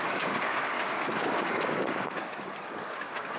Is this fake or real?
fake